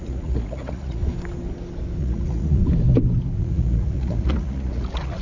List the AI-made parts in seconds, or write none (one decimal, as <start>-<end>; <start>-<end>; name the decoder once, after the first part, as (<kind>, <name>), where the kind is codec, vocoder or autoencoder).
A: 0.0-1.0 (vocoder, Vocos); 2.0-2.6; 3.4-5.2